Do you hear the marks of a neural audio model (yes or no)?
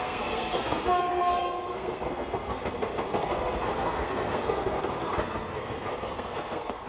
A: yes